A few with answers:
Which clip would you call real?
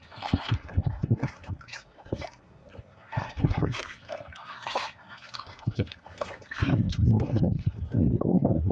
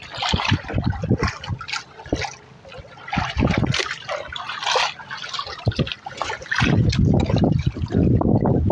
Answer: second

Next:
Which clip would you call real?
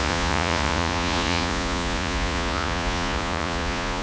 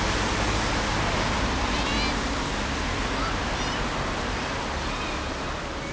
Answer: second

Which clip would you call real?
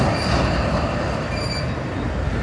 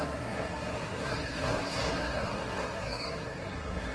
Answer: first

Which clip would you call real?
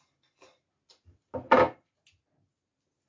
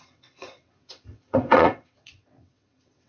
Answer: first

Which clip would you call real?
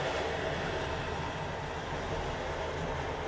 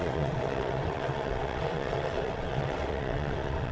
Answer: first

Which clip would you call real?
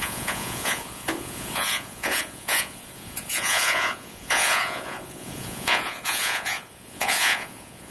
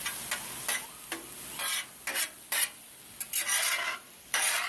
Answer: second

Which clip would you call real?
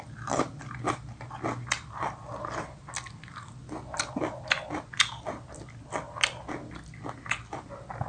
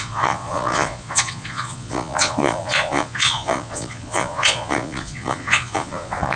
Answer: first